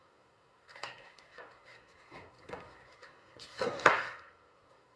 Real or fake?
fake